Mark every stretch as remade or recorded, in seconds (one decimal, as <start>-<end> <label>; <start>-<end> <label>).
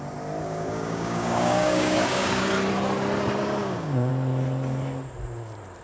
0.0-0.4 recorded; 0.4-2.5 remade; 2.5-3.6 recorded; 3.6-4.1 remade; 4.1-5.8 recorded